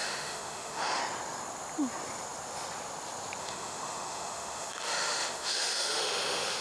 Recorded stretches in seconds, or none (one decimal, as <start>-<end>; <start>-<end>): 1.0-3.4